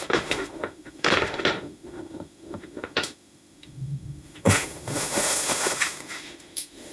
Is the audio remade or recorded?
remade